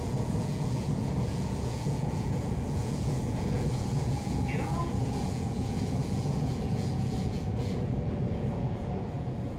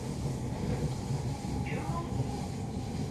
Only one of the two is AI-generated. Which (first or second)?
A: first